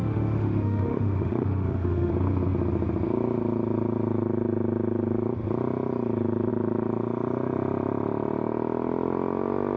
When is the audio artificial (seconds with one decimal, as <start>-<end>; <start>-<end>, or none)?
0.0-2.1